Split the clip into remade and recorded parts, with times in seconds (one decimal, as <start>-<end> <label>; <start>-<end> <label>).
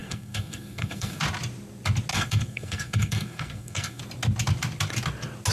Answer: 0.0-1.2 remade; 1.2-2.1 recorded; 2.1-4.0 remade; 4.0-5.5 recorded